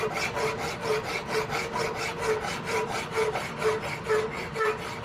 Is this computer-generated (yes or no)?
no